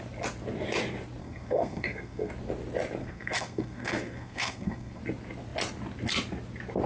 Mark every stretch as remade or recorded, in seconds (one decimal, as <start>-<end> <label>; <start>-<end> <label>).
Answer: 0.0-1.2 recorded; 1.2-2.3 remade; 2.3-3.0 recorded; 3.0-5.0 remade; 5.0-6.9 recorded

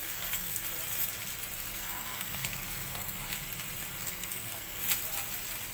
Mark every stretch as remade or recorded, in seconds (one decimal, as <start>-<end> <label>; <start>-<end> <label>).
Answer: 0.0-0.6 remade; 0.6-1.7 recorded; 1.7-3.2 remade; 3.2-4.0 recorded; 4.0-4.8 remade; 4.8-5.7 recorded

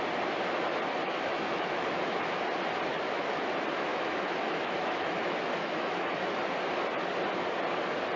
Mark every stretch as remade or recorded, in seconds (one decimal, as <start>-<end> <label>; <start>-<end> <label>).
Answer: 0.0-1.0 recorded; 1.0-2.4 remade; 2.4-2.9 recorded; 2.9-3.5 remade; 3.5-3.9 recorded; 3.9-6.4 remade; 6.4-8.2 recorded

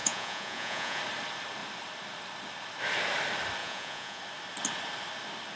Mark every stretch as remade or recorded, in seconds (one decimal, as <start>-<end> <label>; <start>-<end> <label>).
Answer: 0.0-1.0 remade; 1.0-3.6 recorded; 3.6-4.2 remade; 4.2-5.6 recorded

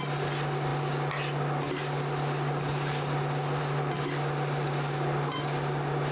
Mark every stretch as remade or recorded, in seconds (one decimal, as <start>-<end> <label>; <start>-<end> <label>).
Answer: 0.0-6.1 recorded

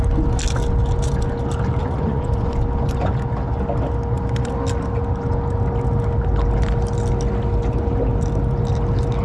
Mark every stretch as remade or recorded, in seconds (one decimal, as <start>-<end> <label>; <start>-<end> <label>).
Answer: 0.0-1.8 recorded; 1.8-2.5 remade; 2.5-9.2 recorded

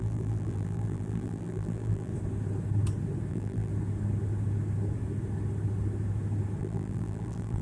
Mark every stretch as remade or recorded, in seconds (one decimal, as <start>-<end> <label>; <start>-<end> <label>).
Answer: 0.0-2.1 remade; 2.1-3.3 recorded; 3.3-3.7 remade; 3.7-6.6 recorded; 6.6-7.6 remade